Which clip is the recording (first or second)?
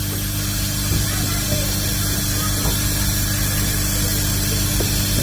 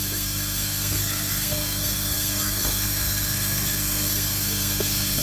first